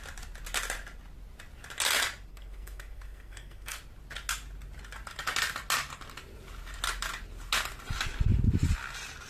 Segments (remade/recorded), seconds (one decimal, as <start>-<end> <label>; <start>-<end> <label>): 0.0-2.3 recorded; 2.3-3.8 remade; 3.8-9.3 recorded